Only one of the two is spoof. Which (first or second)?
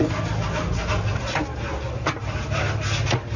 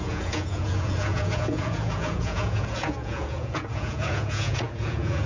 second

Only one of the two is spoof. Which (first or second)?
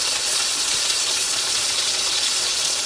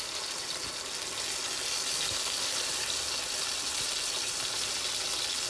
first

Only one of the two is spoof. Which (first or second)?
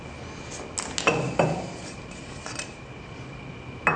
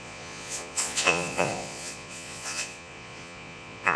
second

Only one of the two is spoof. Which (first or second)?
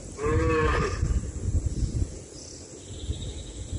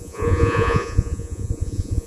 second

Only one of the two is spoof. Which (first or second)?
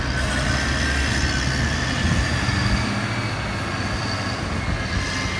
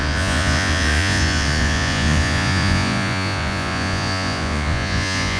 second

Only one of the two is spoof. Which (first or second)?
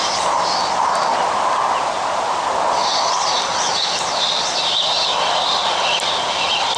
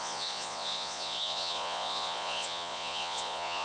second